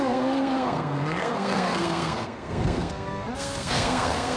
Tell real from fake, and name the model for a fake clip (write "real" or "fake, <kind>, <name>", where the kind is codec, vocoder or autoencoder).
fake, codec, SNAC